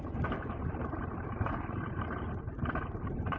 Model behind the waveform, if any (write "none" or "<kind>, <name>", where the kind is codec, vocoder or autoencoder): vocoder, BigVGAN v2